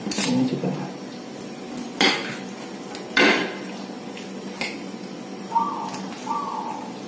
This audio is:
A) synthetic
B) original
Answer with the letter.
B